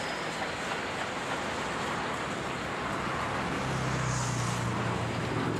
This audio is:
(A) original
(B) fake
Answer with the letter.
A